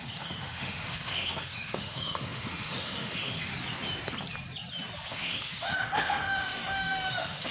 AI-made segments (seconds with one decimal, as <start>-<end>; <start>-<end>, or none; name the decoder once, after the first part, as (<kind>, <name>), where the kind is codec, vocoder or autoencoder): 0.0-3.5 (autoencoder, DAC-VAE); 5.1-7.5